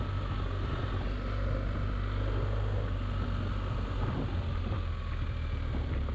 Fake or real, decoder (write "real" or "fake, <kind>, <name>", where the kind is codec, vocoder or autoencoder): real